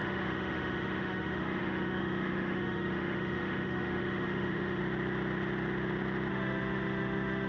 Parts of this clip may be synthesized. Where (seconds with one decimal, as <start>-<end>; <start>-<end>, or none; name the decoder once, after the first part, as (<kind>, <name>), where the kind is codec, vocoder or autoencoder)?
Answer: 0.0-4.8 (autoencoder, DAC-VAE); 6.3-7.5